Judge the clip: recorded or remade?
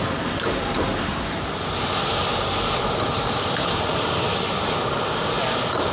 remade